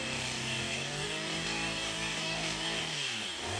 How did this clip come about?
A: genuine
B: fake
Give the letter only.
B